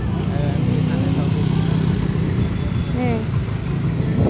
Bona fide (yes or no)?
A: yes